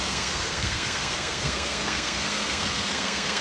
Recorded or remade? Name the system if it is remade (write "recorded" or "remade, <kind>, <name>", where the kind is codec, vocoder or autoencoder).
remade, codec, SNAC